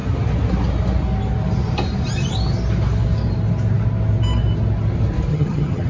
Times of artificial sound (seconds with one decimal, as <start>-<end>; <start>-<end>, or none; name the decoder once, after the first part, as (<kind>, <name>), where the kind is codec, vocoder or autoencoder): 5.3-5.9 (vocoder, HiFi-GAN)